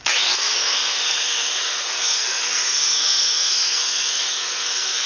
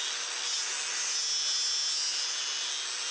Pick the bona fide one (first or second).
second